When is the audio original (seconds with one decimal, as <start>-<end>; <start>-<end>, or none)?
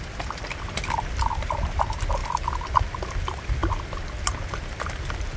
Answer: 0.0-5.4